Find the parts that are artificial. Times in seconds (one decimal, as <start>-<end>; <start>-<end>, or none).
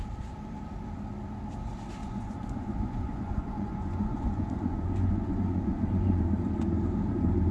2.0-6.2